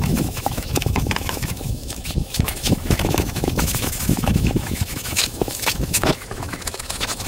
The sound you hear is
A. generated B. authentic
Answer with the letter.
A